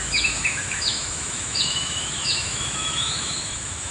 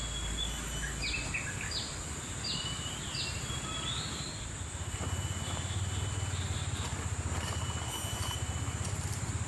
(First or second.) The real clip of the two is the second